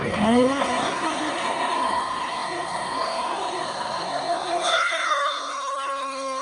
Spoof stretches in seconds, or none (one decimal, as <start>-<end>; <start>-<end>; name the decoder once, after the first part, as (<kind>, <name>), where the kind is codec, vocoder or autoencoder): 0.0-6.4 (codec, SNAC)